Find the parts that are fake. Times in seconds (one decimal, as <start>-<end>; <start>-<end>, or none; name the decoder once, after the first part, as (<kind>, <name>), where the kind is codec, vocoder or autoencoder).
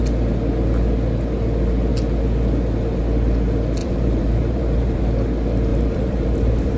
3.8-5.0 (vocoder, BigVGAN v2); 5.7-6.8